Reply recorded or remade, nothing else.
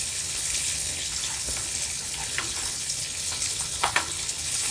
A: remade